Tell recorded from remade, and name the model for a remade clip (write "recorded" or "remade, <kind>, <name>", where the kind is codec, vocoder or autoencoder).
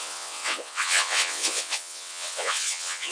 remade, vocoder, WaveNeXt